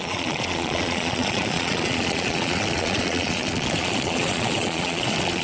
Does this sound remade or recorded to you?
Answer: remade